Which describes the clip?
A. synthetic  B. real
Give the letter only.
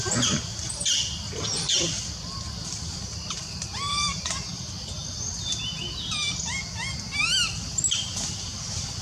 B